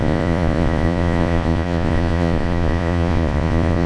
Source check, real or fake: fake